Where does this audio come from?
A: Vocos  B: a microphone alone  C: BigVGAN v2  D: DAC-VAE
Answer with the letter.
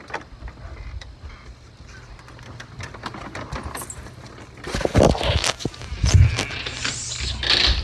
B